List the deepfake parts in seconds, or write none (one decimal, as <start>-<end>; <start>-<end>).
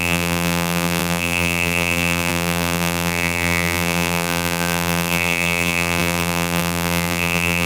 0.0-7.7